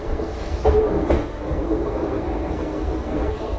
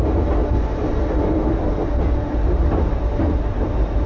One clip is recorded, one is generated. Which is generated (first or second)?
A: first